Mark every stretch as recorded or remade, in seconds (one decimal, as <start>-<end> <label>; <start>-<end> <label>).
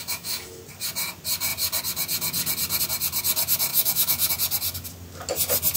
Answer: 0.0-0.6 remade; 0.6-3.7 recorded; 3.7-4.3 remade; 4.3-5.8 recorded